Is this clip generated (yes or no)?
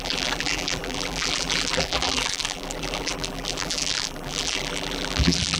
yes